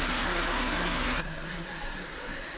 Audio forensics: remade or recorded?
remade